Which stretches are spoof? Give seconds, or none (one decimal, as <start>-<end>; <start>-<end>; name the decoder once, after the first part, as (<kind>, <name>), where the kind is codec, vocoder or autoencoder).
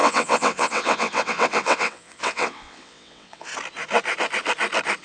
0.0-3.5 (vocoder, WaveNeXt)